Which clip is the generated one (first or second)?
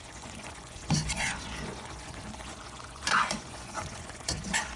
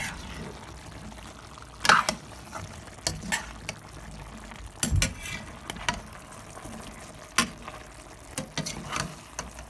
first